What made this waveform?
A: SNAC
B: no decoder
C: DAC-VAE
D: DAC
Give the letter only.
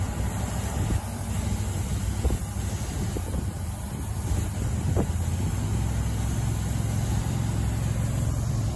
B